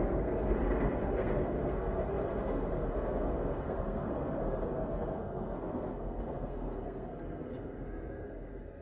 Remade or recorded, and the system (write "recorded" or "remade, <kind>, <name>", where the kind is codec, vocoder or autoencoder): remade, codec, SNAC